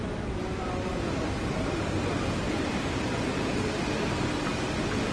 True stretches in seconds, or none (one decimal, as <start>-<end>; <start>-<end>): 0.0-0.4; 3.5-5.1